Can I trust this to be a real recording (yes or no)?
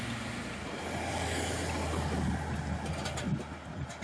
yes